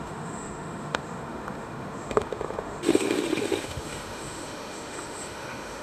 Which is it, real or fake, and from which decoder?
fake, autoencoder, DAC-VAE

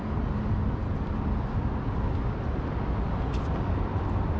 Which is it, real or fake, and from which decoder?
real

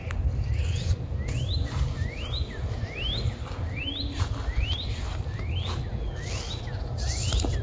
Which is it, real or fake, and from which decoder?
real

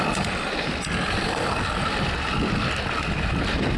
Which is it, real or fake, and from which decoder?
real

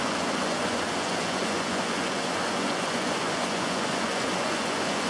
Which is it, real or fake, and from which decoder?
fake, vocoder, Vocos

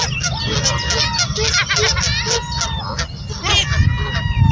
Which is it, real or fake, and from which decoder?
real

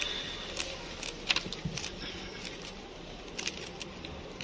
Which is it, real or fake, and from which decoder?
real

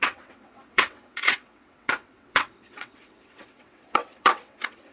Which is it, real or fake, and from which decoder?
fake, vocoder, WaveNeXt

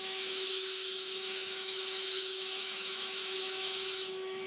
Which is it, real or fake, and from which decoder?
fake, autoencoder, DAC-VAE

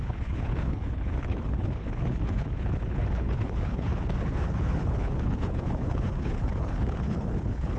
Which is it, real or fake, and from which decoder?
fake, codec, HILCodec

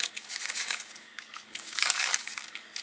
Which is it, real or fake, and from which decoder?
fake, codec, DAC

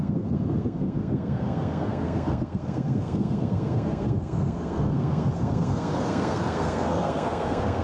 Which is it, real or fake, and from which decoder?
fake, codec, SNAC